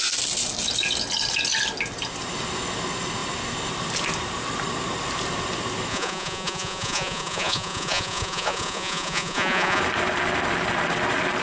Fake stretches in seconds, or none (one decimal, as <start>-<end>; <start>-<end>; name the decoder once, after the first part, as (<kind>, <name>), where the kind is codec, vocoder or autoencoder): 5.9-9.8 (vocoder, Vocos)